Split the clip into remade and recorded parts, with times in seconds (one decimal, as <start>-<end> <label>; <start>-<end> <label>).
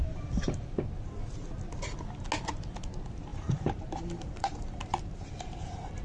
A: 0.0-3.3 recorded; 3.3-6.0 remade